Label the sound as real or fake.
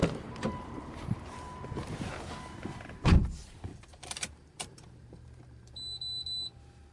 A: fake